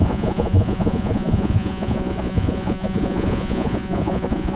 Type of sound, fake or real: fake